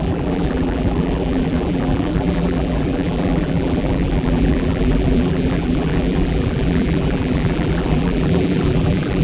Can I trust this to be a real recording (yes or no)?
no